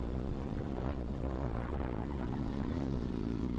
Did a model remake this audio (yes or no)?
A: yes